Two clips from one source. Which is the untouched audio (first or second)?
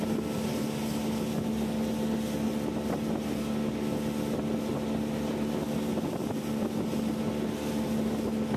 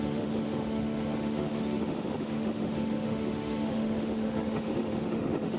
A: first